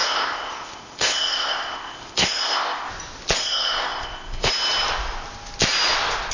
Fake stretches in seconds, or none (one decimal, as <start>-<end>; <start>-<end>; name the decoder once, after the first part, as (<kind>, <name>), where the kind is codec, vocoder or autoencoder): 0.0-2.9 (codec, ZipCodec); 3.4-4.5